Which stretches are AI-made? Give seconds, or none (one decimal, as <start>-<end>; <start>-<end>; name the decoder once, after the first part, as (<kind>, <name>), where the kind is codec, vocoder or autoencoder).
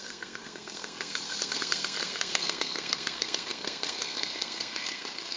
0.0-5.4 (codec, SNAC)